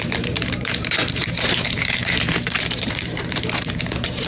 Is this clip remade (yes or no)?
yes